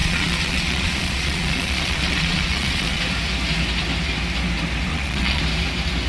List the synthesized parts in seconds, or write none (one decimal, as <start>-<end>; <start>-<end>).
0.0-3.0; 4.9-5.4